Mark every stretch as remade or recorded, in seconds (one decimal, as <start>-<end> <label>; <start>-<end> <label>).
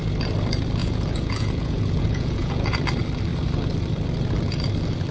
0.0-0.8 recorded; 0.8-2.8 remade; 2.8-5.1 recorded